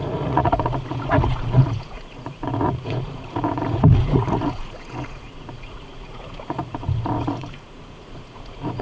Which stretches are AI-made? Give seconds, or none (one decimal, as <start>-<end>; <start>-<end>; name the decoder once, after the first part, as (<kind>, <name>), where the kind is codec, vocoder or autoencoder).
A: 0.0-8.8 (vocoder, Vocos)